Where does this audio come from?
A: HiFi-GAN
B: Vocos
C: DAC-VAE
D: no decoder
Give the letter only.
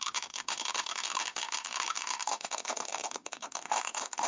C